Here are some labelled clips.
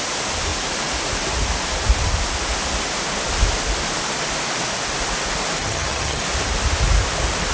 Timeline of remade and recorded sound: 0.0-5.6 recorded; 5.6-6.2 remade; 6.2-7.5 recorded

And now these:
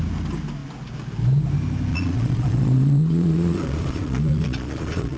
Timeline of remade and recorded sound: 0.0-1.9 recorded; 1.9-5.2 remade

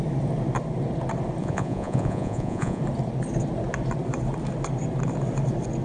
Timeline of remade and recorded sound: 0.0-1.4 recorded; 1.4-2.8 remade; 2.8-5.8 recorded

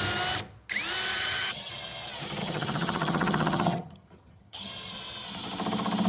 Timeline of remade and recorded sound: 0.0-1.1 recorded; 1.1-1.7 remade; 1.7-2.4 recorded; 2.4-4.7 remade; 4.7-6.1 recorded

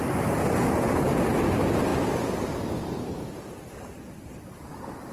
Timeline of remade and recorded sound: 0.0-1.9 recorded; 1.9-5.1 remade

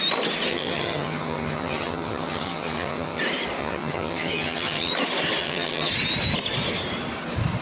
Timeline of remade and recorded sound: 0.0-0.5 recorded; 0.5-3.2 remade; 3.2-3.6 recorded; 3.6-4.9 remade; 4.9-5.4 recorded; 5.4-5.9 remade; 5.9-7.6 recorded

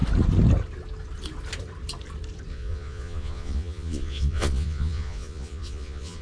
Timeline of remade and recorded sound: 0.0-2.5 recorded; 2.5-6.2 remade

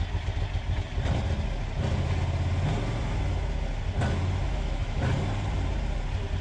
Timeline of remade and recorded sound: 0.0-4.4 recorded; 4.4-5.0 remade; 5.0-6.4 recorded